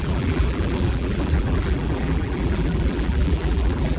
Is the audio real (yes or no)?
no